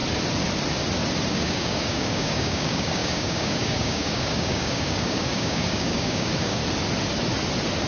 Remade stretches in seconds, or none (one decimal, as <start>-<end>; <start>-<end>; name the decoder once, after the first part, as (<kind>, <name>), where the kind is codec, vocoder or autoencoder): 1.3-6.6 (codec, DAC)